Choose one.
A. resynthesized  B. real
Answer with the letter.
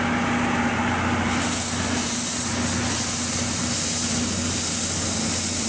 B